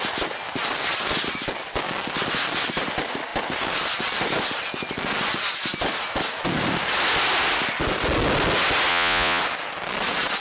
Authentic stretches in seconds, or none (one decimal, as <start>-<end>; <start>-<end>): 0.0-8.9; 9.4-10.4